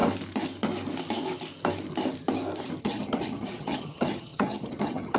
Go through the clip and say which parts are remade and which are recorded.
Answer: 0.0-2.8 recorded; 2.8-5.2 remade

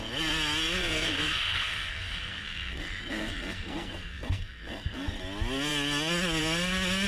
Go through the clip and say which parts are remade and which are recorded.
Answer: 0.0-0.8 recorded; 0.8-5.1 remade; 5.1-7.1 recorded

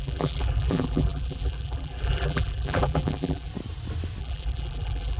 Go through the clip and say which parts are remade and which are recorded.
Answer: 0.0-3.5 remade; 3.5-4.2 recorded; 4.2-5.2 remade

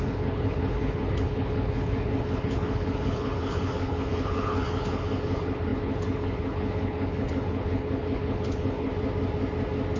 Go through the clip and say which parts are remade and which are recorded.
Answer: 0.0-8.9 remade; 8.9-10.0 recorded

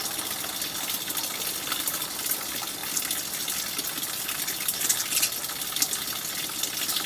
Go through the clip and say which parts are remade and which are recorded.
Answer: 0.0-7.1 recorded

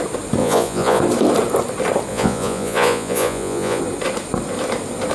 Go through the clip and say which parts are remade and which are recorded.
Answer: 0.0-0.4 recorded; 0.4-1.0 remade; 1.0-2.1 recorded; 2.1-3.8 remade; 3.8-5.1 recorded

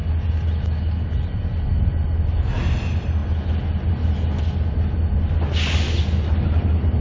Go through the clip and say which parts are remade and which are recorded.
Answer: 0.0-7.0 recorded